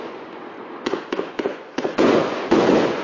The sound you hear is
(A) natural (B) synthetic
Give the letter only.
B